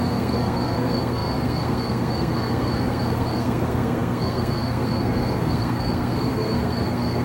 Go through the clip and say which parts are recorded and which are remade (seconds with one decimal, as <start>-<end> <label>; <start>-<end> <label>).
0.0-7.2 remade